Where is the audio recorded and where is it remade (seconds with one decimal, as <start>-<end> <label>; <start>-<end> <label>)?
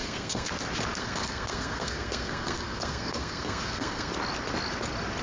0.0-0.5 remade; 0.5-1.0 recorded; 1.0-4.1 remade; 4.1-5.2 recorded